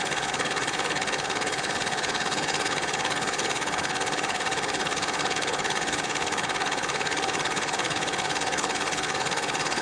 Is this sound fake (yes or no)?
yes